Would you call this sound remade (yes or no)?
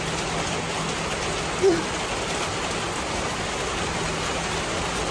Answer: no